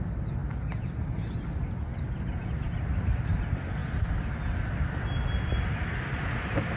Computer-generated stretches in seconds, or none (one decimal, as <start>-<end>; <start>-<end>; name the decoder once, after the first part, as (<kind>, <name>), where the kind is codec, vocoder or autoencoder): none